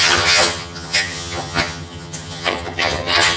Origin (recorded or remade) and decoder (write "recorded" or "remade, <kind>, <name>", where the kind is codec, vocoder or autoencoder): remade, vocoder, HiFi-GAN